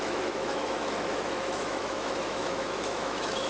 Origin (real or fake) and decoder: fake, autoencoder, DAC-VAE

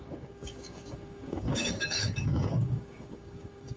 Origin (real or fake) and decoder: fake, codec, DAC